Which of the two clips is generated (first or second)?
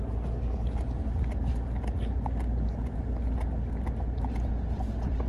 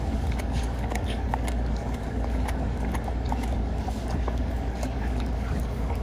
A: second